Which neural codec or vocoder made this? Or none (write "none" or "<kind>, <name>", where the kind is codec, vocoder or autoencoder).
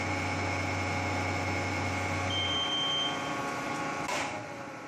none